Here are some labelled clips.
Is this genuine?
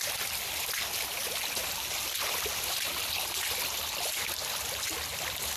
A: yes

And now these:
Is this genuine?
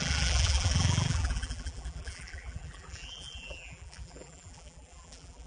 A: no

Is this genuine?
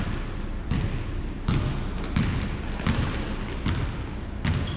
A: yes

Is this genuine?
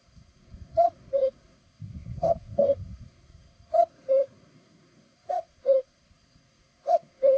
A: no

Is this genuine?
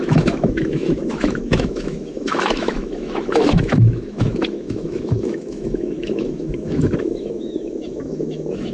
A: no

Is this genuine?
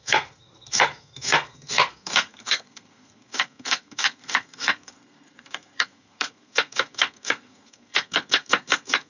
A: no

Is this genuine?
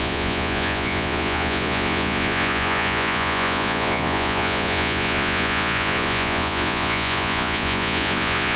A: no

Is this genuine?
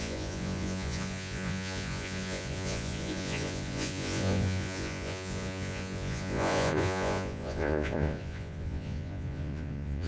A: no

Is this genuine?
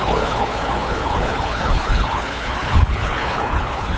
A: no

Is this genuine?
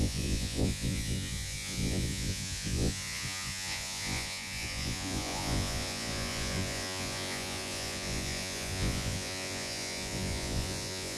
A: no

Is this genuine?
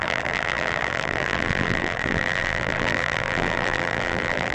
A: no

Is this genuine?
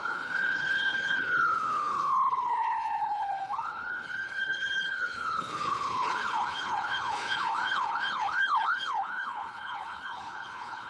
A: no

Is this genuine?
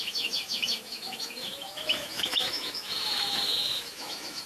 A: no